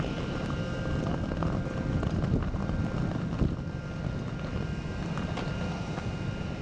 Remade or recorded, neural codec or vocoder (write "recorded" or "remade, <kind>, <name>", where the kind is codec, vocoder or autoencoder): recorded